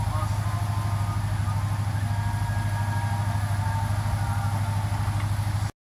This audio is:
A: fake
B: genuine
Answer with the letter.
B